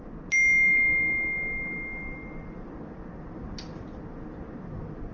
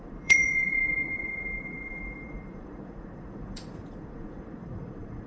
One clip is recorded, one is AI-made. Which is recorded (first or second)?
first